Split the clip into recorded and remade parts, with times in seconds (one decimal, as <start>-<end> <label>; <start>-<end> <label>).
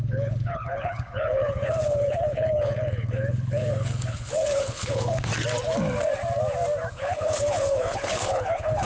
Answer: 0.0-5.3 remade; 5.3-6.9 recorded; 6.9-8.8 remade